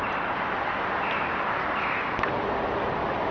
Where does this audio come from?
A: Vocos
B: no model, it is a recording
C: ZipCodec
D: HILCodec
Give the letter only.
B